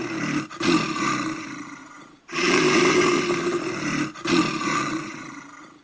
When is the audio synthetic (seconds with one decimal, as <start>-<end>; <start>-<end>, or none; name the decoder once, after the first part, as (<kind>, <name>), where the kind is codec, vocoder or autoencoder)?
1.8-2.6 (vocoder, Vocos); 4.7-5.3